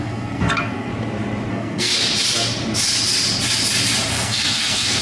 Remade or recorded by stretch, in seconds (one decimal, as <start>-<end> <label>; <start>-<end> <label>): 0.0-0.9 remade; 0.9-1.5 recorded; 1.5-1.9 remade; 1.9-4.1 recorded; 4.1-5.0 remade